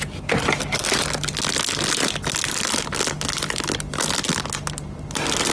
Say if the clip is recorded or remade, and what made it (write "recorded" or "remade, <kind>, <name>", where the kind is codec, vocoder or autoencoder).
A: recorded